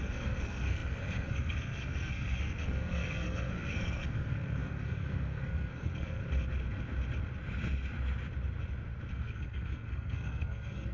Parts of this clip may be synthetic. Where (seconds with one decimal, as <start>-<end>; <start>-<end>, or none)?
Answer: 0.0-6.2; 9.1-10.9